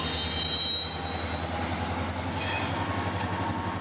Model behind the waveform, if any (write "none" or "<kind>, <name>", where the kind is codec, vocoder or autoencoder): none